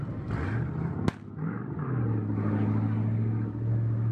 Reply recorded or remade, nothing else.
recorded